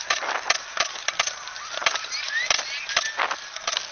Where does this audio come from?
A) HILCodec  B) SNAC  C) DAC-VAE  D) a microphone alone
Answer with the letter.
D